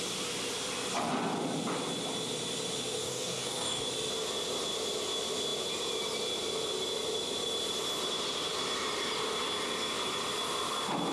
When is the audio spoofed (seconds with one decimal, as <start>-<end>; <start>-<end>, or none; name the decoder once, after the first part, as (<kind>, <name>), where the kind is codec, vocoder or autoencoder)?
3.0-3.9 (codec, DAC)